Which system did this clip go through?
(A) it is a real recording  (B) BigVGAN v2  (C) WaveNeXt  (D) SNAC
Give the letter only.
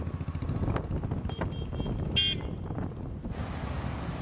A